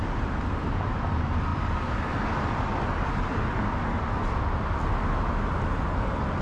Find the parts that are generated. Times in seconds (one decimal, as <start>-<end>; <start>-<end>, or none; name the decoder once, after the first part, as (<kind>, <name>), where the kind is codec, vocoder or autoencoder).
none